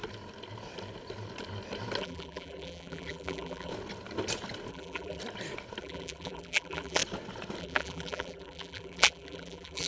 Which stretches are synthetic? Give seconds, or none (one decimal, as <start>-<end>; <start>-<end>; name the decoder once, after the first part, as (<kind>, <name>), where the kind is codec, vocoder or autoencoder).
2.0-3.7 (vocoder, BigVGAN v2); 4.7-5.2; 5.8-7.0; 7.6-9.9